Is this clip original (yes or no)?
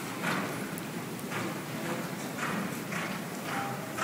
yes